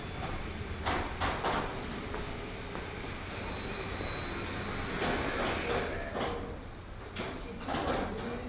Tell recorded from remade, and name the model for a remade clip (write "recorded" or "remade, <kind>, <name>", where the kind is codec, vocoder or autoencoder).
recorded